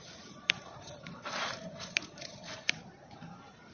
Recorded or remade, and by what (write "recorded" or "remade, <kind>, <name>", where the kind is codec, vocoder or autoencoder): remade, vocoder, BigVGAN v2